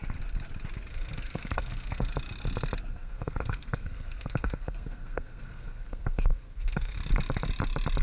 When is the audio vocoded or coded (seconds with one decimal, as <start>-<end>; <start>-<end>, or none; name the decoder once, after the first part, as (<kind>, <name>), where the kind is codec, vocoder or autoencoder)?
0.9-2.1 (codec, SNAC); 2.9-7.0